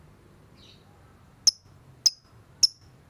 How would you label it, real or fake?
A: real